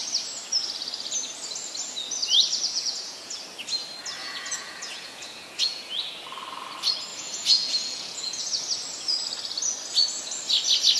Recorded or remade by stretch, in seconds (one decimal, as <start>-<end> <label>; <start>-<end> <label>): 0.0-2.7 recorded; 2.7-3.4 remade; 3.4-4.2 recorded; 4.2-5.9 remade; 5.9-7.1 recorded; 7.1-8.4 remade; 8.4-11.0 recorded